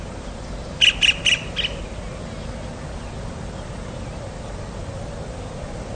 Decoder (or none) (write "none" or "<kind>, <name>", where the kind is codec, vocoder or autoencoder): none